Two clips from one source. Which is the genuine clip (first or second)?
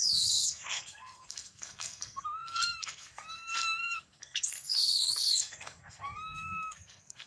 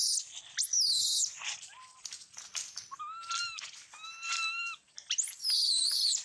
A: second